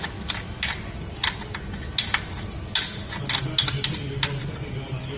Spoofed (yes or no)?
no